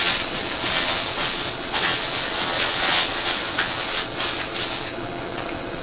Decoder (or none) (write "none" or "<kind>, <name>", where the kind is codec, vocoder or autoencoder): vocoder, WaveNeXt